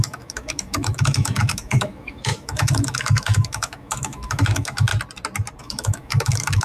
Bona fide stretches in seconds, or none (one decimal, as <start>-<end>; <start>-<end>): 4.9-5.6